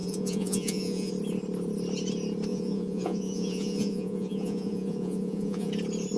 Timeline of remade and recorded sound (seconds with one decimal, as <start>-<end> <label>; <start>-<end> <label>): 0.0-1.1 remade; 1.1-2.5 recorded; 2.5-5.7 remade; 5.7-6.2 recorded